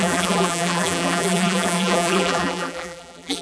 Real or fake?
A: fake